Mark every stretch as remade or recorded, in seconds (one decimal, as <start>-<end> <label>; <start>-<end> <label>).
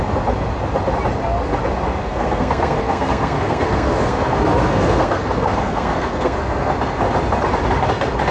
0.0-2.0 recorded; 2.0-6.7 remade; 6.7-8.3 recorded